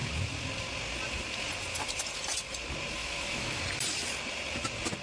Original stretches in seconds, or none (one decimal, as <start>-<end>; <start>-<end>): 0.0-3.0; 3.6-5.0